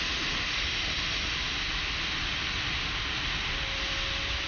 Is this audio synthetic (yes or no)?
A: no